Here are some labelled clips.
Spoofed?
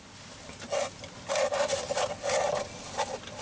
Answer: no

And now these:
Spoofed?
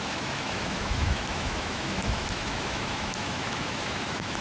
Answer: yes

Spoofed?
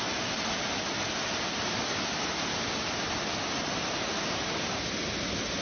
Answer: no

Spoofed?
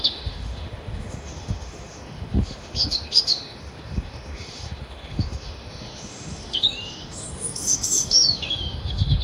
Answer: yes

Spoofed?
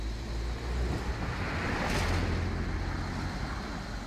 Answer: no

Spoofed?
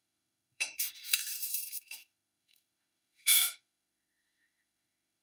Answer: yes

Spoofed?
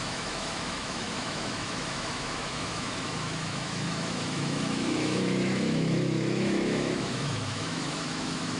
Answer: yes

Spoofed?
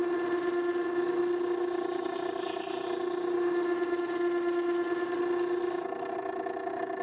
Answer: no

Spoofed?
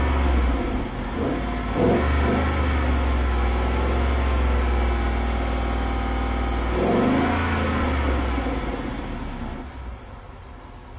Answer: no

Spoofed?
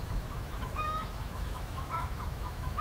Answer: yes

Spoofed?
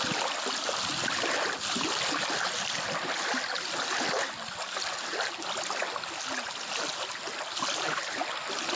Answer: no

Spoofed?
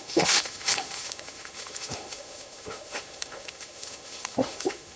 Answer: yes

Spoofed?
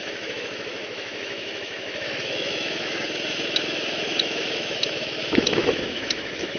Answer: yes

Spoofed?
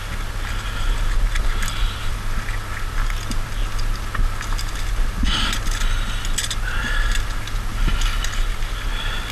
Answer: no